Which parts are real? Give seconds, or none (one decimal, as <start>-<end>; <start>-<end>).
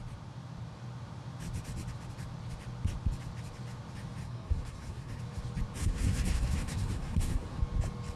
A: 0.0-4.2; 5.2-5.8; 7.6-8.2